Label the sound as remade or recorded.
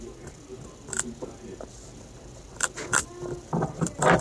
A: recorded